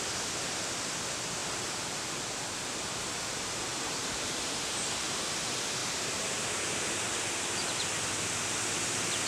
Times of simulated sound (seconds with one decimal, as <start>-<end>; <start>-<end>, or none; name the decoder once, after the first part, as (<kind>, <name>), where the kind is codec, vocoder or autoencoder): 3.7-5.2 (vocoder, BigVGAN v2); 5.8-7.0